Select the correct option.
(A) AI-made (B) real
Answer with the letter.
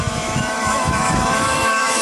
A